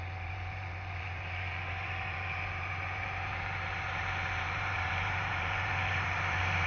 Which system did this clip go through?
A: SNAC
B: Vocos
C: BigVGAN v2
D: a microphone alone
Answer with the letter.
C